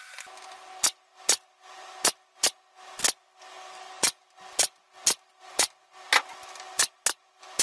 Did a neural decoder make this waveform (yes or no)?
no